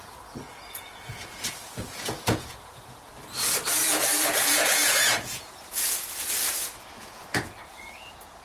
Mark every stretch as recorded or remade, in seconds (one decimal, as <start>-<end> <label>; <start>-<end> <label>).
0.0-3.1 remade; 3.1-3.7 recorded; 3.7-8.4 remade